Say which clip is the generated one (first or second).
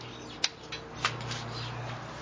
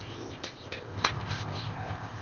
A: second